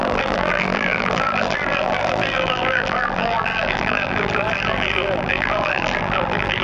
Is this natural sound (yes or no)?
no